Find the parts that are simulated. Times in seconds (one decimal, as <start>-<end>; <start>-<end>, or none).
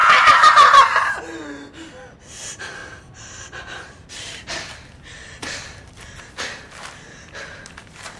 2.8-6.2